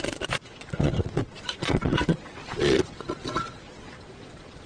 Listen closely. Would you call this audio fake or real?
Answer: fake